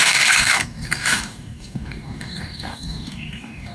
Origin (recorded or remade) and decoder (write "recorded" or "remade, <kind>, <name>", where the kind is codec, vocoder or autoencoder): remade, codec, DAC